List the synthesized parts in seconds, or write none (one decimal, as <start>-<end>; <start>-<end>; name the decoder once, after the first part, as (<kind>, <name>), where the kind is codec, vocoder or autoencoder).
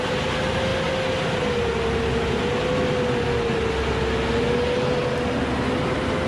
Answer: none